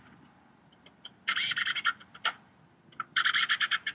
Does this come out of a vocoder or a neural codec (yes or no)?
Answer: no